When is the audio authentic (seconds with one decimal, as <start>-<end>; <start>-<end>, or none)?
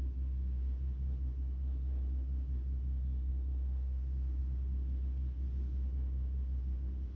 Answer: 0.0-7.2